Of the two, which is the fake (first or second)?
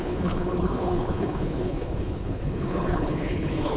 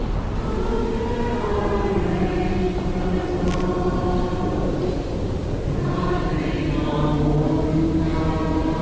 first